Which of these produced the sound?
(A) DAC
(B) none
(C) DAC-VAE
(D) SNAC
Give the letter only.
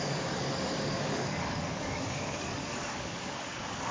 A